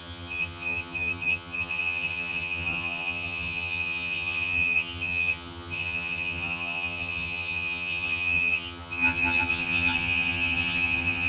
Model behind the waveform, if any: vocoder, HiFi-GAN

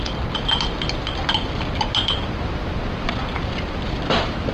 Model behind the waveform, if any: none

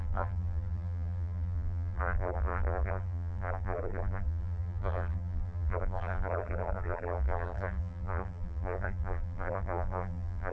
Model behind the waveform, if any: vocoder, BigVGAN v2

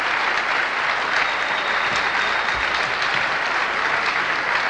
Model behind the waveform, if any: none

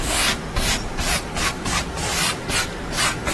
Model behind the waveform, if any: none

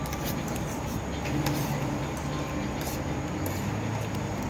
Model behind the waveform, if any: none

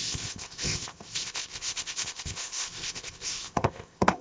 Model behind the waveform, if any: codec, ZipCodec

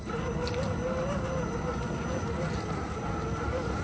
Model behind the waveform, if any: none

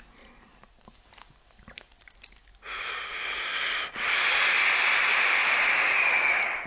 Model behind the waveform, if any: none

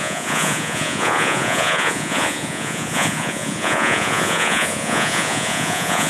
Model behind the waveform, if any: vocoder, Vocos